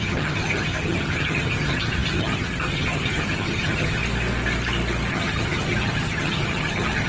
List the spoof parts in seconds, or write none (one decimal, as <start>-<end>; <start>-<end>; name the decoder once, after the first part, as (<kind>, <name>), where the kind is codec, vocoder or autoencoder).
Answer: 0.0-4.0 (vocoder, HiFi-GAN); 5.1-7.1